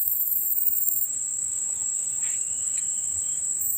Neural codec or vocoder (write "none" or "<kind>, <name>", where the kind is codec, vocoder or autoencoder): autoencoder, DAC-VAE